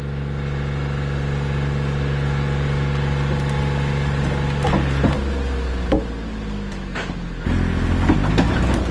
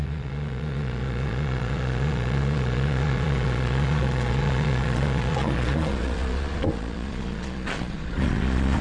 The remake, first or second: second